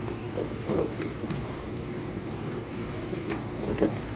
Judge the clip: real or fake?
fake